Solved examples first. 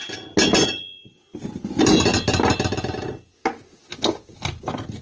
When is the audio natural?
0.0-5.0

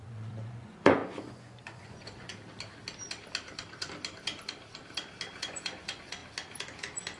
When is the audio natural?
2.3-5.3; 6.2-7.2

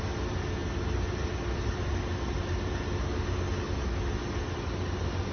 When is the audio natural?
0.0-5.3

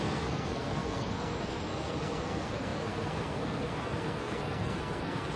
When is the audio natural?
none

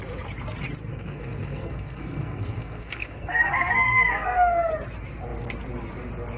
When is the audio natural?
0.0-0.9; 4.7-6.4

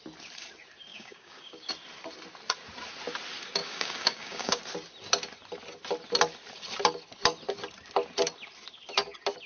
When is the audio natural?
0.0-0.9; 1.7-3.6; 4.6-9.5